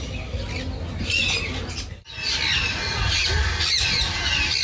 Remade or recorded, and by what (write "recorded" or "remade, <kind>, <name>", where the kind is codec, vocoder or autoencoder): recorded